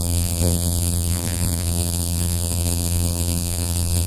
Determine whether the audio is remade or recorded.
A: remade